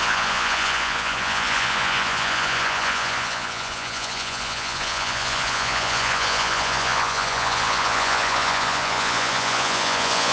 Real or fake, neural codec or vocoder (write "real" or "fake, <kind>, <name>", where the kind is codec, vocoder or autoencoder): fake, vocoder, Vocos